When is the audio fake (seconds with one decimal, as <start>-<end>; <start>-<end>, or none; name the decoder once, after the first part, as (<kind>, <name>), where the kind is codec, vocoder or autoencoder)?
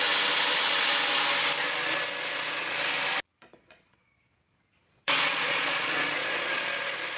3.3-6.6 (vocoder, Vocos)